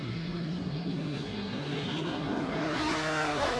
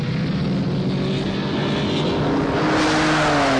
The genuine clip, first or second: second